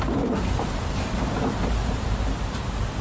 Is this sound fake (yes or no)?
no